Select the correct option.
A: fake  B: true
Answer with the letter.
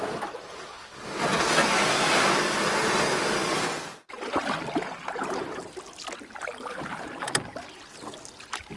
B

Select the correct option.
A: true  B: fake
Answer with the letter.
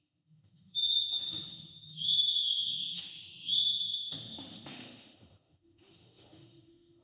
B